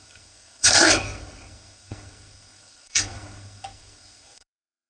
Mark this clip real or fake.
fake